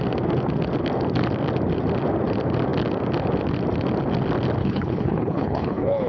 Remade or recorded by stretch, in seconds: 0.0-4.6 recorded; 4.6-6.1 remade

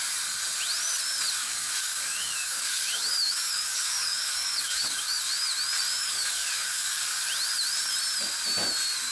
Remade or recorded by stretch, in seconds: 0.0-1.4 recorded; 1.4-5.2 remade; 5.2-6.0 recorded; 6.0-7.3 remade; 7.3-9.1 recorded

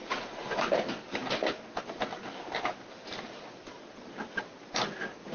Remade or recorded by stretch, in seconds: 0.0-0.7 remade; 0.7-5.3 recorded

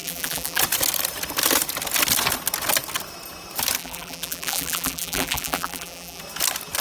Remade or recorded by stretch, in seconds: 0.0-0.6 remade; 0.6-3.8 recorded; 3.8-6.2 remade; 6.2-6.8 recorded

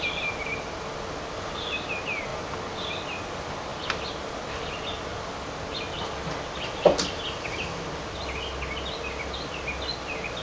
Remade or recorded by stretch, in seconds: 0.0-10.4 recorded

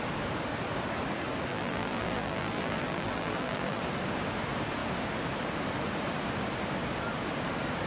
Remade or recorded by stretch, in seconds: 0.0-1.5 recorded; 1.5-3.8 remade; 3.8-7.9 recorded